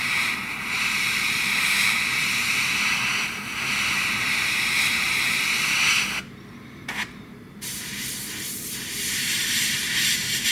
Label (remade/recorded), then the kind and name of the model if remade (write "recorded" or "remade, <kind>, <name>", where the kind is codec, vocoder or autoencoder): remade, vocoder, BigVGAN v2